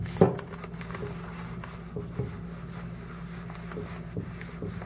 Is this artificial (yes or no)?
no